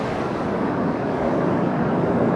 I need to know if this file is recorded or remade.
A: remade